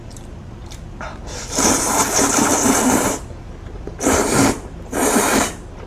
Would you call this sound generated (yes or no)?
yes